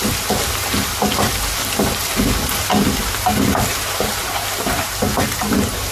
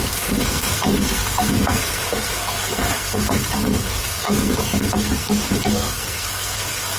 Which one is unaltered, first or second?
first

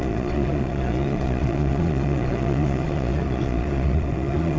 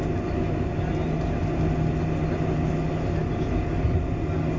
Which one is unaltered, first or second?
second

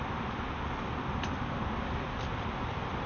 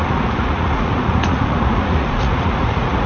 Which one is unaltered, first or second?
first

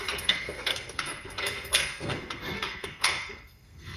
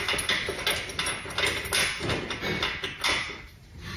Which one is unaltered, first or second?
second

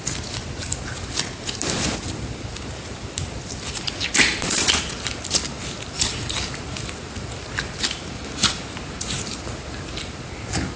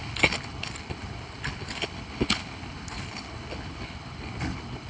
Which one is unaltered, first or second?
first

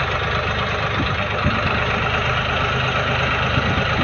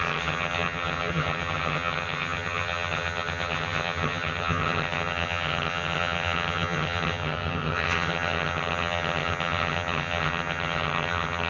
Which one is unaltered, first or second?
first